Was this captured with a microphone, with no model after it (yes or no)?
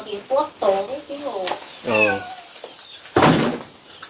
yes